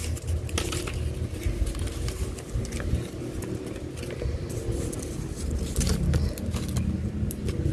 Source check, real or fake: real